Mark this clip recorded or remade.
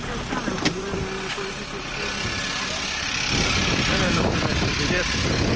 recorded